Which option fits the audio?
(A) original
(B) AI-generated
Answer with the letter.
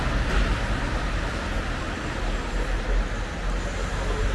A